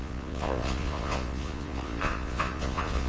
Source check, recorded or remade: remade